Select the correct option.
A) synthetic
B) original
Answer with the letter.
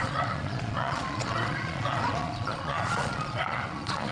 A